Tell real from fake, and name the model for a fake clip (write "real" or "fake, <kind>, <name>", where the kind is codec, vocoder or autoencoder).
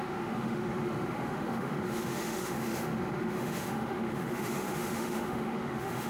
fake, autoencoder, DAC-VAE